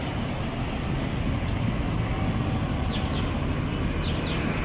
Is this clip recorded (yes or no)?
yes